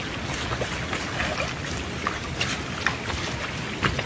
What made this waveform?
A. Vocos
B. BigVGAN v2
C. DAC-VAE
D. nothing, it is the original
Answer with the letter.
D